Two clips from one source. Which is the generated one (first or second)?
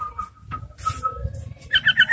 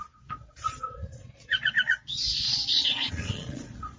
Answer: second